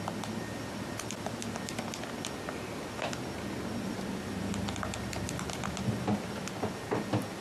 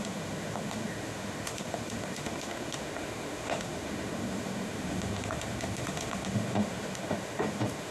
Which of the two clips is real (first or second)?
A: first